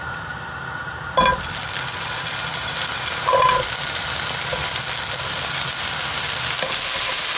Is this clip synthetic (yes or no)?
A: no